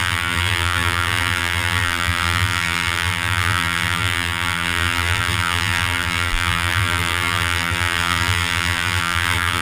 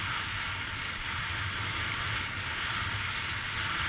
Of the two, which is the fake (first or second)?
first